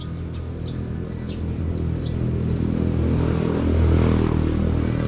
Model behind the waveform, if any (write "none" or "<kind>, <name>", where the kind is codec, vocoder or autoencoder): none